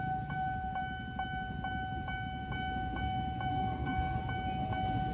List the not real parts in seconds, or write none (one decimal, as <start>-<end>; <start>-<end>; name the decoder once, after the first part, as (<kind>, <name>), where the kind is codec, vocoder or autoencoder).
3.5-4.2 (codec, SNAC)